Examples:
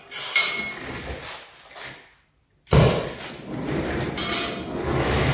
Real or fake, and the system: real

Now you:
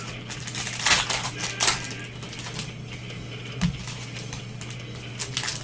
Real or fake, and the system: real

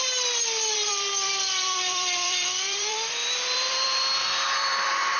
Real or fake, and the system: fake, vocoder, BigVGAN v2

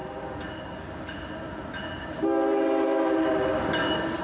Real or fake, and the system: real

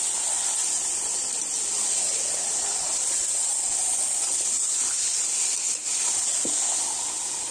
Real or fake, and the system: real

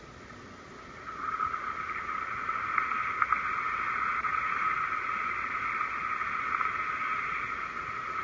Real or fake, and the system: real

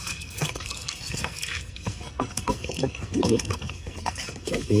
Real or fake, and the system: fake, codec, SNAC